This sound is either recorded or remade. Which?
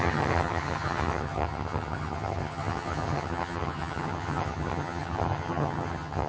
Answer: remade